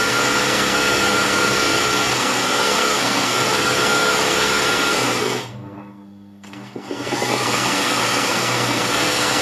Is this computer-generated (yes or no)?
yes